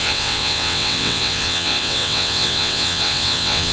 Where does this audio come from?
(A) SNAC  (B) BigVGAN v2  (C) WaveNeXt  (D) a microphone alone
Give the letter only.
C